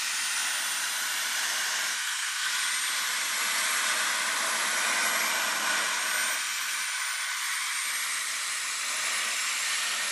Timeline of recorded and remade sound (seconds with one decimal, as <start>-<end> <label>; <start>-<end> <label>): 0.0-1.9 recorded; 1.9-2.5 remade; 2.5-10.1 recorded